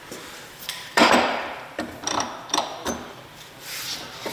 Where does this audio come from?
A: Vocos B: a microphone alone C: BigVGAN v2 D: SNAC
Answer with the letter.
C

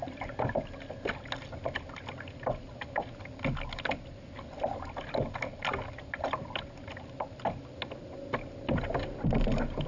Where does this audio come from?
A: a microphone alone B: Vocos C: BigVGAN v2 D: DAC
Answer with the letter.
A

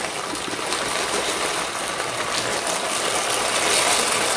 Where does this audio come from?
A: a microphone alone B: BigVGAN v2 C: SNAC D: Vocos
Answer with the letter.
A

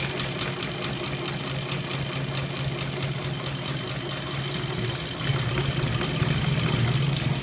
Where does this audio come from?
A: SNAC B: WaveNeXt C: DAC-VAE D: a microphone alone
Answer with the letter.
D